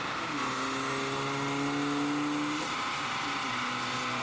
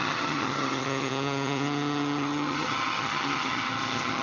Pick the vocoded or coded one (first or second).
second